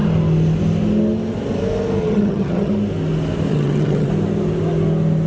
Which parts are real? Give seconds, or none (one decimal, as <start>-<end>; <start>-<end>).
0.0-2.0; 2.7-3.5; 4.1-5.3